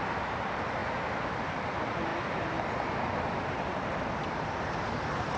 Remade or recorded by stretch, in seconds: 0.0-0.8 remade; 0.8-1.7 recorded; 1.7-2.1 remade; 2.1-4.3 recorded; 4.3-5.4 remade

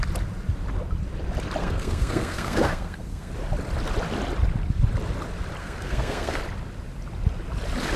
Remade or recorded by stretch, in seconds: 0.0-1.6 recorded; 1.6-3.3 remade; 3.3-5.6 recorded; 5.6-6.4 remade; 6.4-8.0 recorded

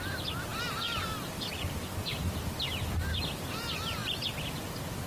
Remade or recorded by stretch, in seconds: 0.0-5.1 remade